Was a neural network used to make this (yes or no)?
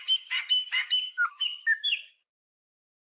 yes